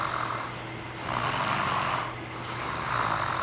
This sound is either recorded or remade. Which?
recorded